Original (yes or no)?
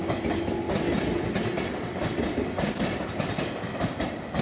yes